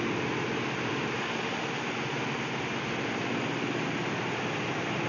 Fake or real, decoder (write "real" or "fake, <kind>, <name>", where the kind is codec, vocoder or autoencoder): real